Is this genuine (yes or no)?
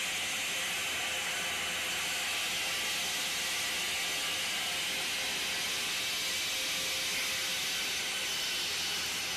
yes